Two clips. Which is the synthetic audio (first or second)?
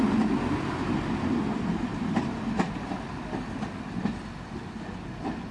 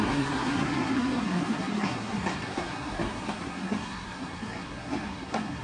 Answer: second